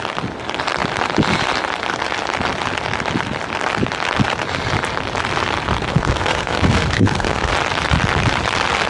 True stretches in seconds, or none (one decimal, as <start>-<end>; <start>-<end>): 0.0-5.9; 7.5-8.9

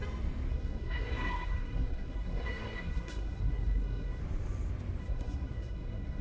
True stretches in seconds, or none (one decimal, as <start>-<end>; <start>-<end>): 0.0-0.5; 4.2-5.0

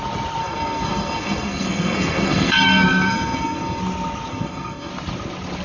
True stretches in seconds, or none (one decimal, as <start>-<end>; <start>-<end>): 0.0-0.4; 3.8-4.3; 4.9-5.6

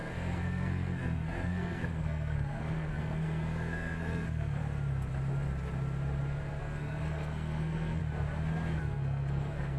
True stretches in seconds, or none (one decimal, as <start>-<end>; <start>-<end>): 4.6-6.6; 8.0-8.8